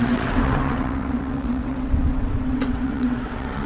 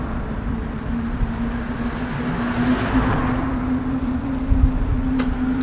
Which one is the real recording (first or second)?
second